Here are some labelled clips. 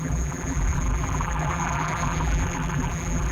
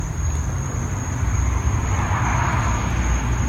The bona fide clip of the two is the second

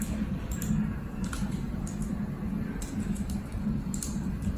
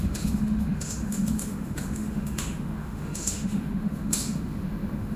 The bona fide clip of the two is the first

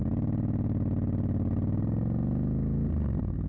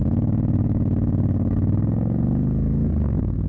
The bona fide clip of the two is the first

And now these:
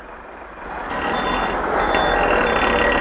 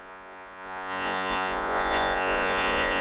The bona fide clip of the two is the first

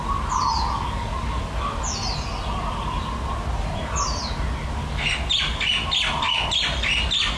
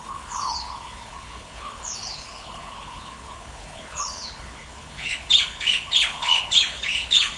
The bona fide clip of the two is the first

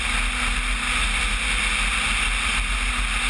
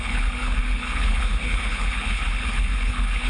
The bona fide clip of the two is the first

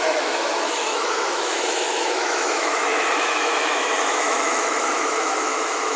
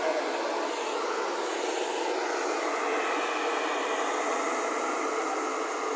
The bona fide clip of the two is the second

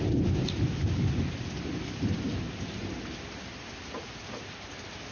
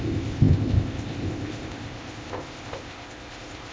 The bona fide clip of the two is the first